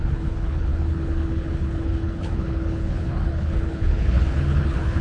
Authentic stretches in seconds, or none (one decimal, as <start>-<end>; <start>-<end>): none